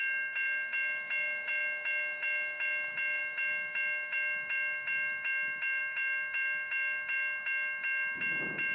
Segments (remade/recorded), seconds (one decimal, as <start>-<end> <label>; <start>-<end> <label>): 0.0-8.7 recorded